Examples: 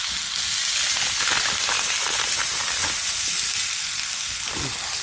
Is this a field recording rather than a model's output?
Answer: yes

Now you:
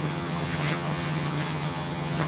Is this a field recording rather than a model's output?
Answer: no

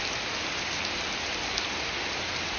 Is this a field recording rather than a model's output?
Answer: yes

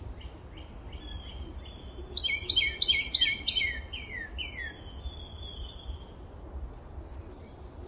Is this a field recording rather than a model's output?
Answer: yes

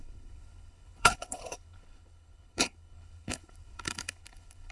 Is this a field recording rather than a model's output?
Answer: no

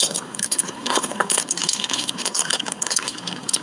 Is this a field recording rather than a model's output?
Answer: no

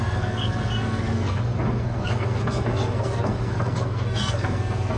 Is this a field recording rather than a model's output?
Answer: no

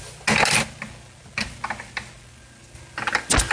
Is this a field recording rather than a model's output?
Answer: yes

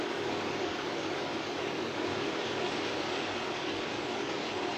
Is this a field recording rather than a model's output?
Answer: no